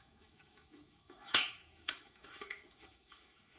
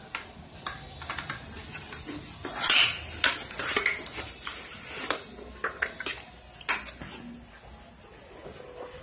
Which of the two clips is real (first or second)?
second